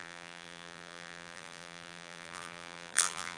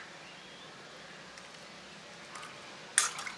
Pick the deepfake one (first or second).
first